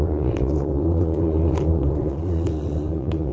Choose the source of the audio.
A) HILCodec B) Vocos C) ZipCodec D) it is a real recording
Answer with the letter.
B